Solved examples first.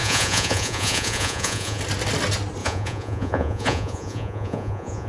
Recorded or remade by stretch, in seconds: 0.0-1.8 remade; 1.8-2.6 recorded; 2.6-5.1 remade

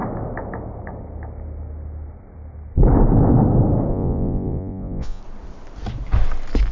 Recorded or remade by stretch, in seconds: 0.0-3.9 recorded; 3.9-5.2 remade; 5.2-6.7 recorded

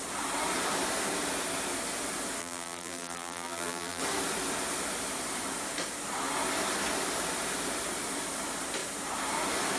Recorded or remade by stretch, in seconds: 0.0-2.4 recorded; 2.4-4.0 remade; 4.0-9.8 recorded

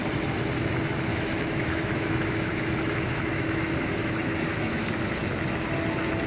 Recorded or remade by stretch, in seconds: 0.0-1.1 recorded; 1.1-4.9 remade; 4.9-6.3 recorded

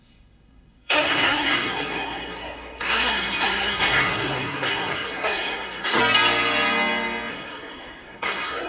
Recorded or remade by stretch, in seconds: 0.0-6.0 remade; 6.0-7.3 recorded; 7.3-8.7 remade

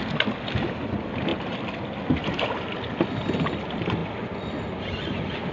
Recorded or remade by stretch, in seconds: 0.0-5.5 recorded

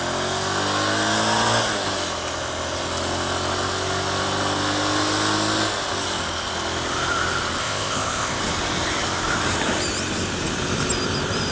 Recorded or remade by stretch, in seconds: 0.0-7.6 recorded; 7.6-8.4 remade; 8.4-11.5 recorded

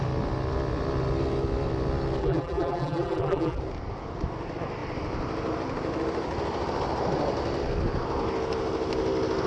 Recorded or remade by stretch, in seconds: 0.0-2.2 recorded; 2.2-3.6 remade; 3.6-9.5 recorded